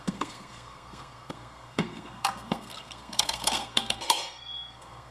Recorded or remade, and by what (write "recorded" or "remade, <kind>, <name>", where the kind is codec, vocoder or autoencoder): remade, codec, SNAC